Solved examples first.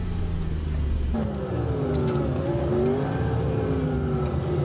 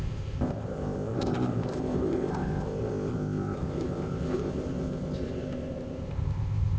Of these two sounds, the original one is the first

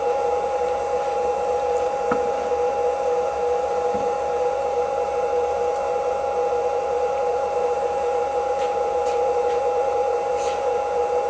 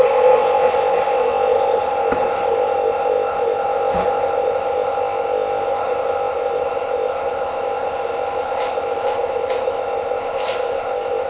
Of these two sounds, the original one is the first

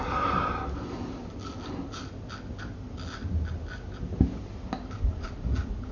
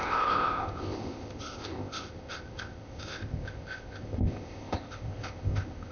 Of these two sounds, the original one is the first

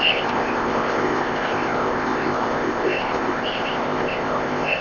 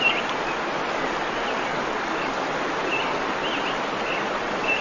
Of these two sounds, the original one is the second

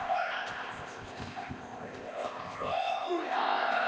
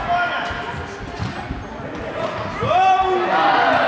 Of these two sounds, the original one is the second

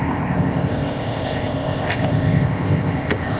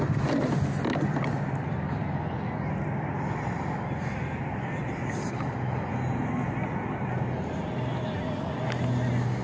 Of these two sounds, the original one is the second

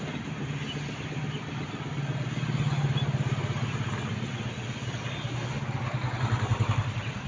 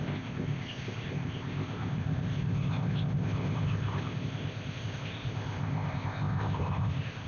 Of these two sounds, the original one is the first